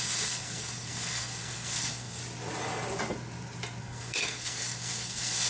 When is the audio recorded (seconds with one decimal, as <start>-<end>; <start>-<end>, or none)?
2.2-3.8

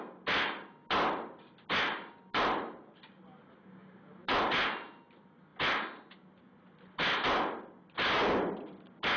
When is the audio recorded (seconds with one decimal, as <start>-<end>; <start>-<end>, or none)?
0.0-9.2

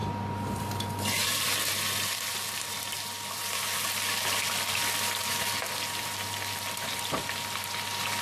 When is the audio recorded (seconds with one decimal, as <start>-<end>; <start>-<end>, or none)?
1.0-8.2